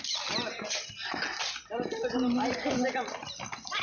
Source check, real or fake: real